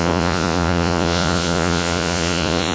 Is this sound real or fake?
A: fake